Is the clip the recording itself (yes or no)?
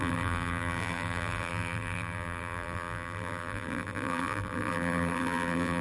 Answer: no